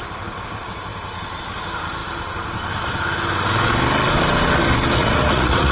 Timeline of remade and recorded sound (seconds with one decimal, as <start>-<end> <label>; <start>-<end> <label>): 0.0-5.0 recorded; 5.0-5.7 remade